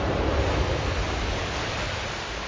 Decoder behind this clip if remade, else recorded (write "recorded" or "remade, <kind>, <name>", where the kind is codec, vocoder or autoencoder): recorded